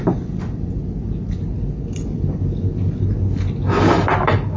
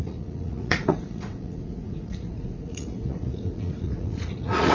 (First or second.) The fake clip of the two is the second